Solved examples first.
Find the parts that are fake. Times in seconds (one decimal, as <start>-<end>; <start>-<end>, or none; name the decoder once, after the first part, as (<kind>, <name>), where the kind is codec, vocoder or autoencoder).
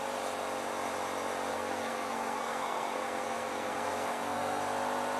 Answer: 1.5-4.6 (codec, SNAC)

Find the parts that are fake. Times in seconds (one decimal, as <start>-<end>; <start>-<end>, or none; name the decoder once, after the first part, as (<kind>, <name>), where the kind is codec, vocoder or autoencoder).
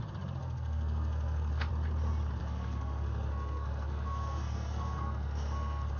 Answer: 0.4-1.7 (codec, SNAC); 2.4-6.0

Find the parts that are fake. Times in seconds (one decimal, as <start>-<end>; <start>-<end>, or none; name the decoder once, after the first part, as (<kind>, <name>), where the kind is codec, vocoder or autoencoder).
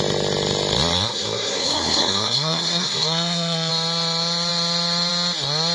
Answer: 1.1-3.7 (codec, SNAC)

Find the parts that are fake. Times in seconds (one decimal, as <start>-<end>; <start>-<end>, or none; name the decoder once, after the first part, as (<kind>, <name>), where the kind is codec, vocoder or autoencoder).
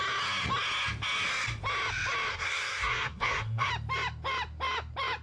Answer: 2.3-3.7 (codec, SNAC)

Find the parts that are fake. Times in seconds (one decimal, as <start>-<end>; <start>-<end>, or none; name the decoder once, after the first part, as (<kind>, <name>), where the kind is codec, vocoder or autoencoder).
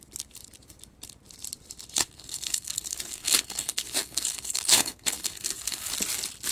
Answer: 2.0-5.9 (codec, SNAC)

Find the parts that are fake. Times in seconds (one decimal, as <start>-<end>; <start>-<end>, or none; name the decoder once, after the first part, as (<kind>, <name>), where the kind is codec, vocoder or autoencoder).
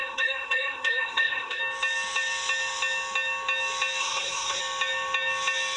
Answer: 0.0-1.6 (codec, SNAC); 4.0-4.6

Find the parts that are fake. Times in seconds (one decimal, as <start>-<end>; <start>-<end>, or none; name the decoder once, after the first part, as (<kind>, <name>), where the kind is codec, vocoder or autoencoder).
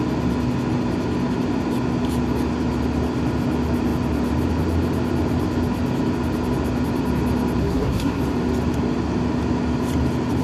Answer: 7.6-8.2 (codec, SNAC)